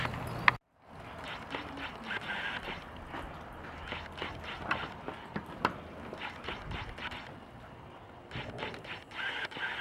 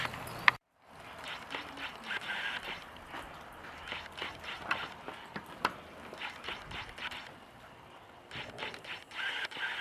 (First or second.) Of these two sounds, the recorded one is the first